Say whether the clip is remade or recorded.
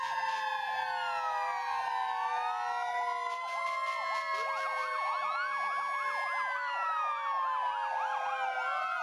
recorded